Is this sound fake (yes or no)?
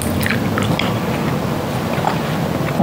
no